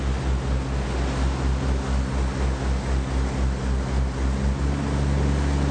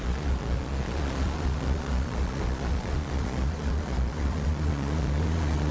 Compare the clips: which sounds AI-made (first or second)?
second